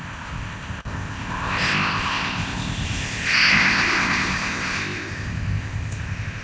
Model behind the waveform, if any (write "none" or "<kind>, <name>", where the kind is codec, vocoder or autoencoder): codec, ZipCodec